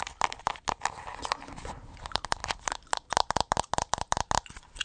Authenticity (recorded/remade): recorded